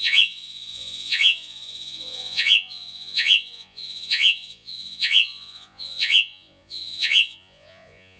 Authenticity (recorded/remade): remade